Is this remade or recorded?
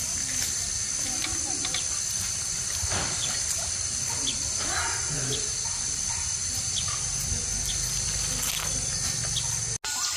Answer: recorded